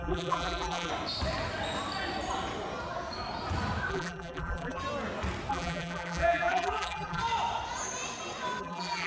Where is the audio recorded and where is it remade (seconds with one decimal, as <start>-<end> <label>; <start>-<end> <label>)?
0.0-0.9 remade; 0.9-3.9 recorded; 3.9-4.8 remade; 4.8-5.5 recorded; 5.5-7.2 remade; 7.2-8.6 recorded; 8.6-9.1 remade